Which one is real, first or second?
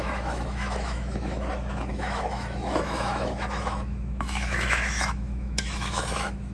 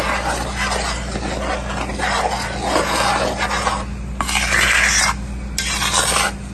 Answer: second